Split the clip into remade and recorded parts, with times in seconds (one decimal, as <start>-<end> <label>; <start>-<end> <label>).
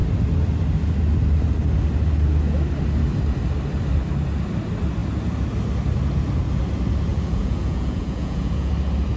0.0-7.1 recorded; 7.1-8.7 remade; 8.7-9.2 recorded